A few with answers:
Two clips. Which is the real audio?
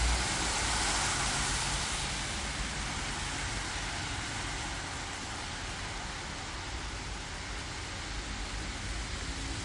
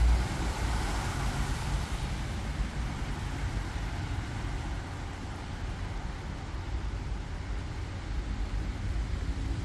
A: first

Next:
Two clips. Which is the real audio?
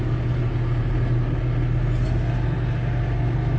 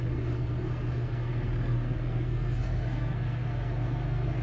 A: first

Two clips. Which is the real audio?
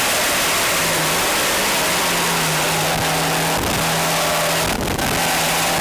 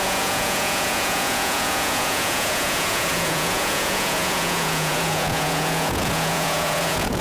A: first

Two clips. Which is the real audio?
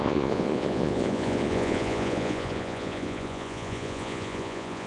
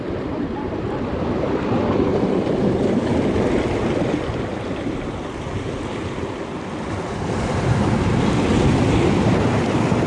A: second